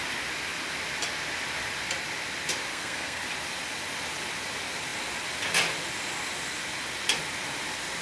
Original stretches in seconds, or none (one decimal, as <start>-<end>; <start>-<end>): 0.0-2.7; 3.2-8.0